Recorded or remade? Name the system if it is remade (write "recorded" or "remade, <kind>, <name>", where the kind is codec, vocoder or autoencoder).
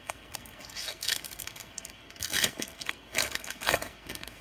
remade, codec, SNAC